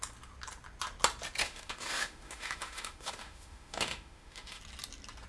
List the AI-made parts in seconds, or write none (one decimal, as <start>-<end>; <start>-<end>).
1.4-4.6